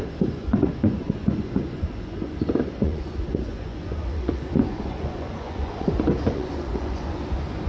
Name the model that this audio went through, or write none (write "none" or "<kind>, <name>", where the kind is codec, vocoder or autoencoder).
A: vocoder, Vocos